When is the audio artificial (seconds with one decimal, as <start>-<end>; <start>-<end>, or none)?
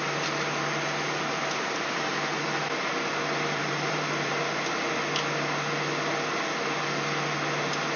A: 3.6-4.4